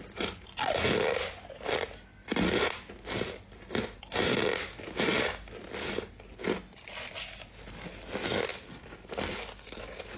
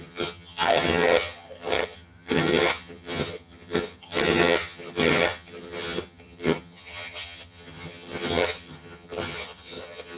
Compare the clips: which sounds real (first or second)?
first